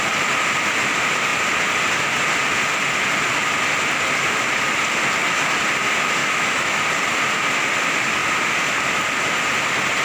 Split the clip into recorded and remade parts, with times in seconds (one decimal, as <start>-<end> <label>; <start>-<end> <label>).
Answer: 0.0-6.2 recorded; 6.2-6.8 remade; 6.8-10.0 recorded